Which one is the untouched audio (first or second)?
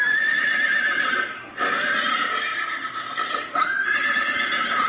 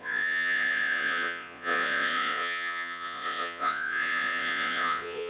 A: first